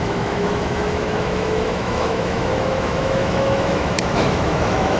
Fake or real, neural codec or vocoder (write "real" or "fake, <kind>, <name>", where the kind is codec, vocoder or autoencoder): fake, autoencoder, DAC-VAE